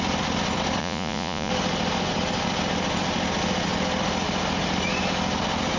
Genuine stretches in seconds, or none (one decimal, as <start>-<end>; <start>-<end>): 0.0-0.8; 1.5-5.8